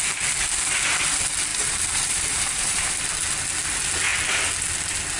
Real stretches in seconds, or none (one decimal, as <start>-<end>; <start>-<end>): 0.0-1.5; 3.1-5.2